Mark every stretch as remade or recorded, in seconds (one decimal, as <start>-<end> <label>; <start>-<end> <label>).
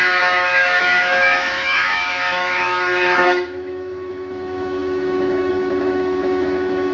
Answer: 0.0-6.9 remade